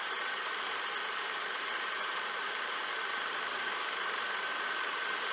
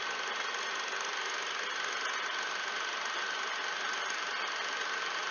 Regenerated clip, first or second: first